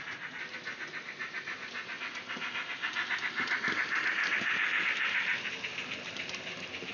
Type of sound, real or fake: real